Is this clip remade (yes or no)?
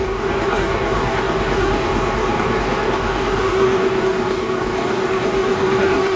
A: yes